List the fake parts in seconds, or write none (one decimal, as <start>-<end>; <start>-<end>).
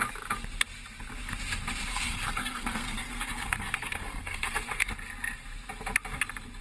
1.9-4.9